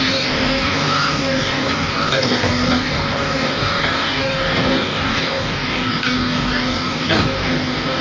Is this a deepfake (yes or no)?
yes